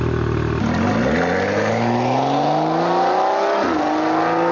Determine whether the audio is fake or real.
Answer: real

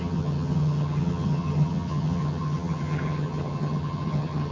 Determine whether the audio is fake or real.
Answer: fake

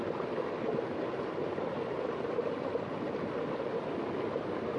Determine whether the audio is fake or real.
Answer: real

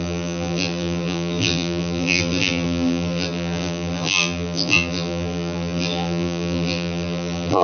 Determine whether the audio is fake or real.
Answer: fake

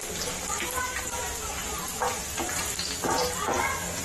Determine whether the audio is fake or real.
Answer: real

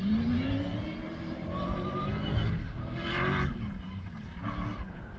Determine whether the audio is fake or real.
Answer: real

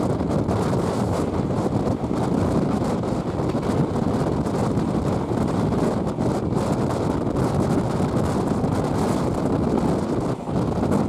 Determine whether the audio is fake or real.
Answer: real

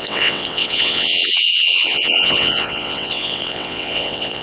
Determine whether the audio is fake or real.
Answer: fake